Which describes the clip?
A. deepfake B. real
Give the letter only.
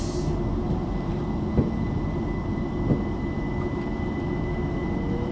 B